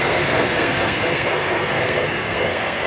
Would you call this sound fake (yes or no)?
yes